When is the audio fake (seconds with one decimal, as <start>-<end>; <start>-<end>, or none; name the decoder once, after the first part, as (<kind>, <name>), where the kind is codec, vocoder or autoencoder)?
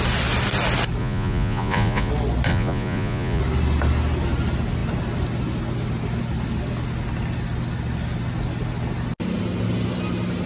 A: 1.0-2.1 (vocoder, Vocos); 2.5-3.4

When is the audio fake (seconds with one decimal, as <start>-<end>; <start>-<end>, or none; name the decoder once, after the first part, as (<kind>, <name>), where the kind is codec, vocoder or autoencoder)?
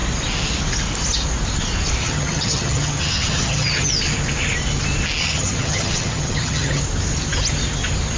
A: 2.0-3.9 (vocoder, HiFi-GAN); 5.2-6.8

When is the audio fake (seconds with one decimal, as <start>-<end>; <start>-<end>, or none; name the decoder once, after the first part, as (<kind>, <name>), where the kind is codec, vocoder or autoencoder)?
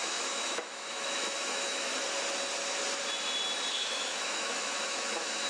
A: 0.0-1.9 (autoencoder, DAC-VAE); 3.7-5.5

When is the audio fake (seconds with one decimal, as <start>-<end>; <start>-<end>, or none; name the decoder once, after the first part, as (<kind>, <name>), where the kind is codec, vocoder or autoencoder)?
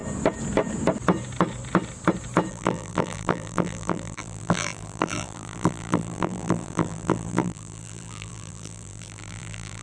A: 2.5-9.8 (vocoder, BigVGAN v2)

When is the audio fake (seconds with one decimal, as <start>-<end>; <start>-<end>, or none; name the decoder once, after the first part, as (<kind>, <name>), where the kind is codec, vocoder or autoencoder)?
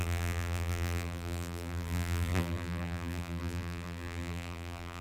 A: 0.0-5.0 (vocoder, BigVGAN v2)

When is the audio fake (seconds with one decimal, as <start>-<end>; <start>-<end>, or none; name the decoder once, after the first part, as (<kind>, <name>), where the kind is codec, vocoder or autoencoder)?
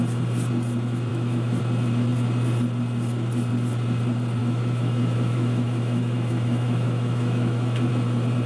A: 1.1-1.6 (autoencoder, DAC-VAE); 4.4-7.9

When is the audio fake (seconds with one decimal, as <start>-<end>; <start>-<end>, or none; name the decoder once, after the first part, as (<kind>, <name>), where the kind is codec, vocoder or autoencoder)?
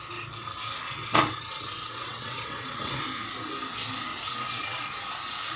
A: 1.0-3.0 (vocoder, WaveNeXt); 4.1-4.8